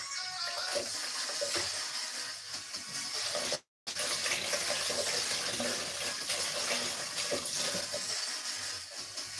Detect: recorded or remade recorded